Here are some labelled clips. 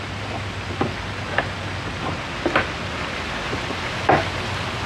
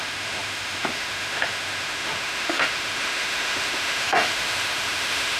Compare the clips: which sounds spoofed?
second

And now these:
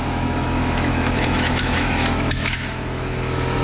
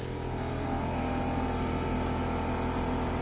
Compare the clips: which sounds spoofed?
first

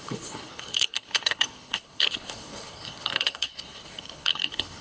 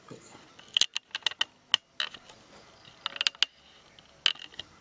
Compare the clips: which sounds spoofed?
first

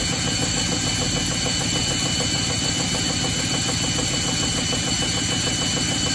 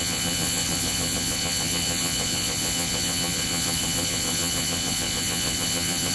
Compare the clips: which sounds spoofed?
second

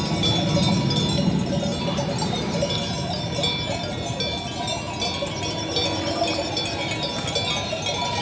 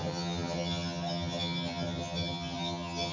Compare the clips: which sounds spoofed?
second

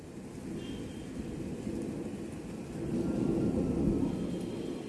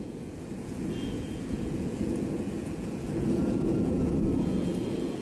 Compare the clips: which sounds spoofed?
second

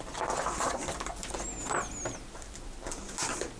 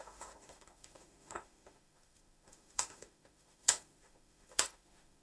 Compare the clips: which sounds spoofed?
second